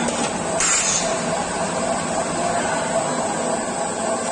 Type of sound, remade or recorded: recorded